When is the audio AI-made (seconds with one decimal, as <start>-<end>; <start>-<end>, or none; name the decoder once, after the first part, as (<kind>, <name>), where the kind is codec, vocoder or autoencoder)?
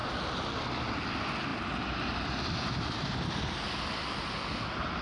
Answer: none